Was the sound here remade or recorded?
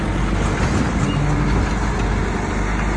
recorded